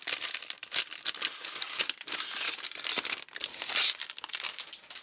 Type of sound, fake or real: real